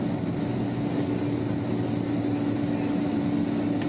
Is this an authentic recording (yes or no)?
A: yes